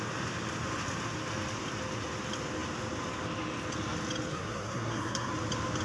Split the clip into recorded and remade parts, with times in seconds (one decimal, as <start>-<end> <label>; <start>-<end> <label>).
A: 0.0-4.3 recorded; 4.3-5.3 remade; 5.3-5.8 recorded